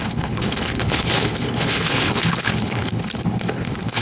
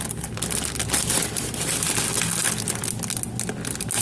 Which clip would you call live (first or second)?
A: second